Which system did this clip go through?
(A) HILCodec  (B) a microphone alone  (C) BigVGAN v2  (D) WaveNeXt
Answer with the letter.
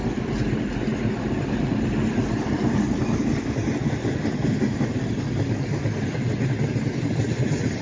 B